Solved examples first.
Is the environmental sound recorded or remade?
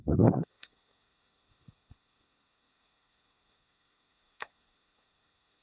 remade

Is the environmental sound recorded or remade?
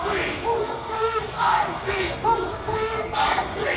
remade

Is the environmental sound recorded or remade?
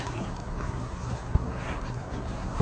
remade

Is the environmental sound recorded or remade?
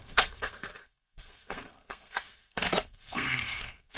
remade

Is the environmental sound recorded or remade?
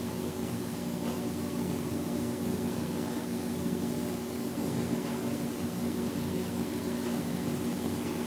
remade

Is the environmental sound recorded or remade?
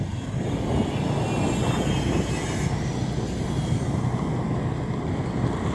recorded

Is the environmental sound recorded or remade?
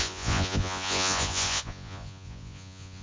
remade